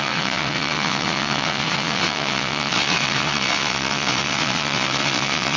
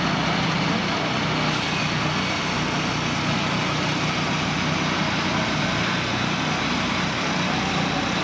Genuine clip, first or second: second